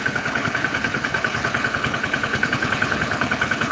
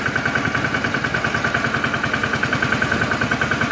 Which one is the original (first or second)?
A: second